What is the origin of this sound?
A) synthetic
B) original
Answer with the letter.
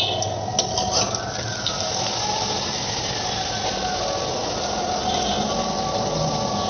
B